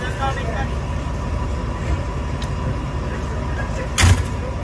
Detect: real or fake real